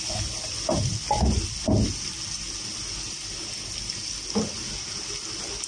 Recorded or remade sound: recorded